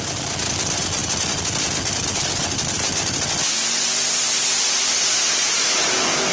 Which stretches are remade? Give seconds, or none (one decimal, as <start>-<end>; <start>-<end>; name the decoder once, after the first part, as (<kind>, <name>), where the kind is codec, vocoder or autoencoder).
none